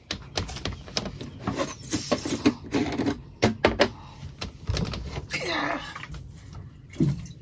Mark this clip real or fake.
fake